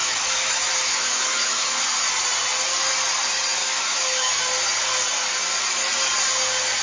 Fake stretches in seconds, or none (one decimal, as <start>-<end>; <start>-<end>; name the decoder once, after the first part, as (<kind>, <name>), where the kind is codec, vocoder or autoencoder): 0.0-1.8 (autoencoder, DAC-VAE); 3.6-4.4